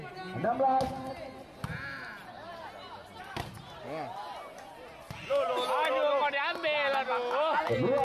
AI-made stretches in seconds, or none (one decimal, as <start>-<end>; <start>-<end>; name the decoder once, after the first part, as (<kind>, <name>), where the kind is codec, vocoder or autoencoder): none